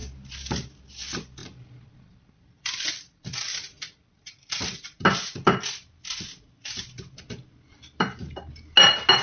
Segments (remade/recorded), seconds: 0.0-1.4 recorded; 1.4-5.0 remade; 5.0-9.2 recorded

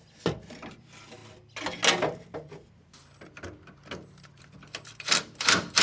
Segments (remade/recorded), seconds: 0.0-0.7 recorded; 0.7-1.2 remade; 1.2-4.4 recorded; 4.4-5.8 remade

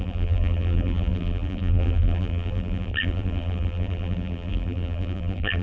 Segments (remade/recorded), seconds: 0.0-5.6 remade

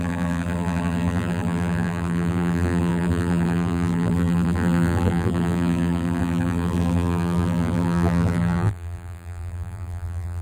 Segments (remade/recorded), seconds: 0.0-10.4 remade